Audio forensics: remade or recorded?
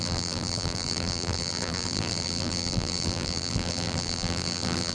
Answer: remade